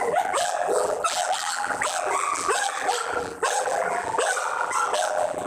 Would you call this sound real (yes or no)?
no